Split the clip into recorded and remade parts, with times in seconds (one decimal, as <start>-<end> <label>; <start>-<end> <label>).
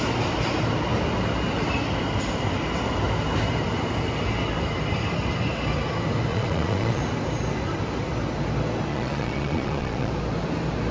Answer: 0.0-6.3 recorded; 6.3-7.0 remade; 7.0-8.9 recorded; 8.9-10.1 remade; 10.1-10.9 recorded